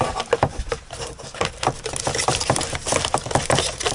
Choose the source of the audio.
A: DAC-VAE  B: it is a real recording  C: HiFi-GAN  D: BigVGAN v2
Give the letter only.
B